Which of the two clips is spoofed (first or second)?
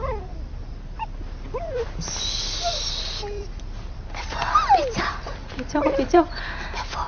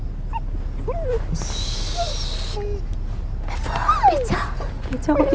first